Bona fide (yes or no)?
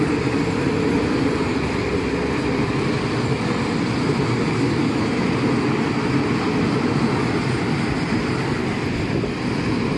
yes